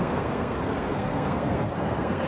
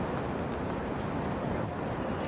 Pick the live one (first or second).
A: second